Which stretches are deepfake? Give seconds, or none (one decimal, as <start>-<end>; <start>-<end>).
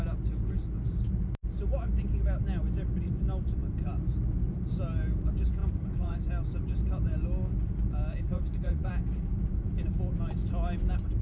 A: 5.6-6.2; 8.3-8.9